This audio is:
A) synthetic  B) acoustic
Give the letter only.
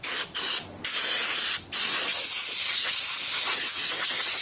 B